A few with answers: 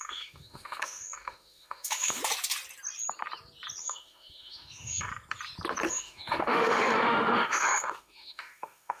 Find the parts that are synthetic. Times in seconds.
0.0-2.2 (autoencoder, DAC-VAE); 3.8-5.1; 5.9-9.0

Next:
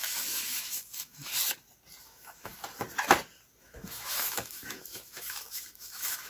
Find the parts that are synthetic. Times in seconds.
0.0-1.3 (autoencoder, DAC-VAE); 2.0-2.5; 3.6-6.3

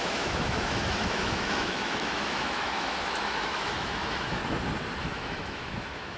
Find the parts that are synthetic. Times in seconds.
0.0-4.4 (autoencoder, DAC-VAE); 5.0-6.2

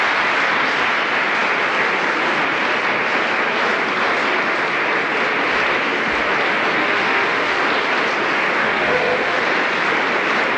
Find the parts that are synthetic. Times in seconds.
6.8-7.6 (autoencoder, DAC-VAE); 8.6-9.4

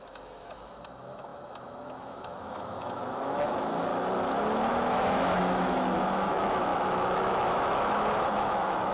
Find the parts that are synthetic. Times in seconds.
0.0-3.9 (autoencoder, DAC-VAE); 4.7-8.9